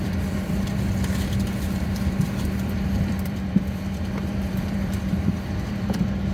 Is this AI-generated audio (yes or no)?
yes